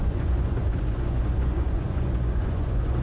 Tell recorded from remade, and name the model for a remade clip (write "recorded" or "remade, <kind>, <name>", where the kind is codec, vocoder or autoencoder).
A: remade, vocoder, Vocos